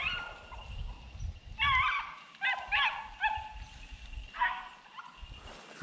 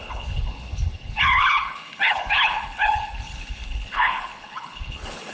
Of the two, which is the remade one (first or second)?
second